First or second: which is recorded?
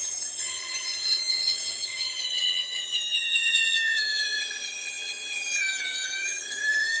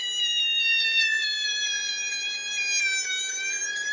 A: second